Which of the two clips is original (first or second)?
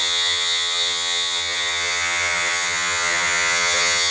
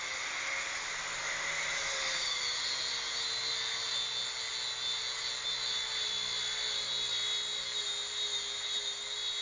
second